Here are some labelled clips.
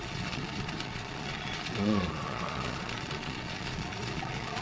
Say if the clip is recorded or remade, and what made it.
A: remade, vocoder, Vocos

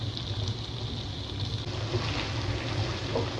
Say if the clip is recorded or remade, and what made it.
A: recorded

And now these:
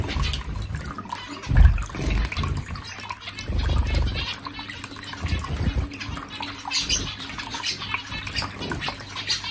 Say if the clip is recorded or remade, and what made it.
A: recorded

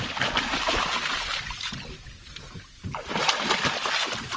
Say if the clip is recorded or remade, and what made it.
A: recorded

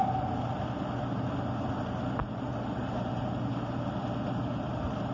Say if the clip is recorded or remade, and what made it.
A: recorded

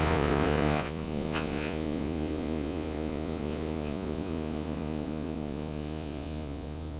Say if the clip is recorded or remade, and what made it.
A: remade, vocoder, Vocos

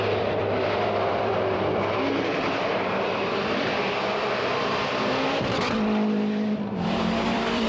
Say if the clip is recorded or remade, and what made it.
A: remade, vocoder, BigVGAN v2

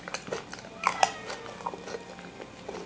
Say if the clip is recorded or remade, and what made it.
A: recorded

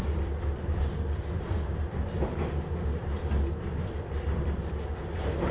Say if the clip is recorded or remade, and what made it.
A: remade, vocoder, BigVGAN v2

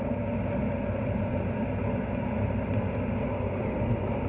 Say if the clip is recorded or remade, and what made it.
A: recorded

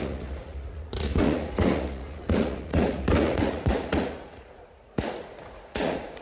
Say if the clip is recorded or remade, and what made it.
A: remade, vocoder, Vocos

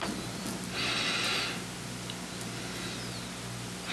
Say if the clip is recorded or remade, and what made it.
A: recorded